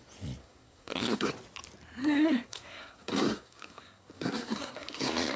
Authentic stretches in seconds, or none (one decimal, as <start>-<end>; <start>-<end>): 0.0-0.4; 1.3-2.0